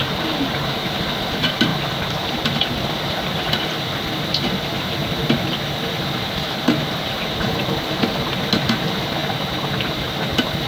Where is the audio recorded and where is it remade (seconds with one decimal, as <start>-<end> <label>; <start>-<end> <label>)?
0.0-1.7 remade; 1.7-6.2 recorded; 6.2-10.7 remade